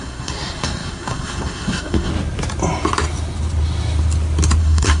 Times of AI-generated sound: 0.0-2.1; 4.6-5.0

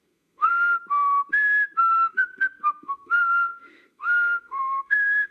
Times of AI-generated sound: 0.0-0.5; 1.8-5.3